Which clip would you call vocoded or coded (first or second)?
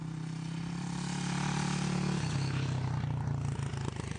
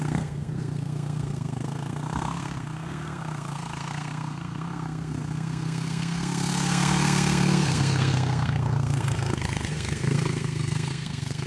second